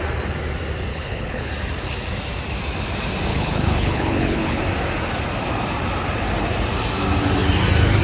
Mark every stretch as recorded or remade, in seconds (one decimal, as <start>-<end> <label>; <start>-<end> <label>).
0.0-0.9 recorded; 0.9-1.5 remade; 1.5-3.3 recorded; 3.3-4.6 remade; 4.6-8.0 recorded